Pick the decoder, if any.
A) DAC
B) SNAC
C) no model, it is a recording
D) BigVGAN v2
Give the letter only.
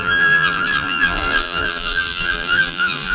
D